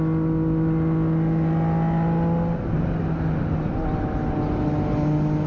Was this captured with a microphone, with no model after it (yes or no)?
yes